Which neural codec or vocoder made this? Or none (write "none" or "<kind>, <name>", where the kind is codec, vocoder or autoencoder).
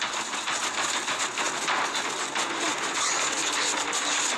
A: none